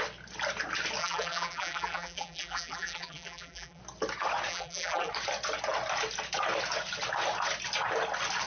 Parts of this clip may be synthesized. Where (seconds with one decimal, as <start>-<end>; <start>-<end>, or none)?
1.0-3.8; 4.5-5.1